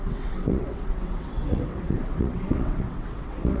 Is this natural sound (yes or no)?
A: no